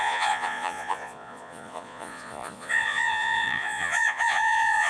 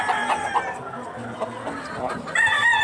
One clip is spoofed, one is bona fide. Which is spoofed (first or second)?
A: first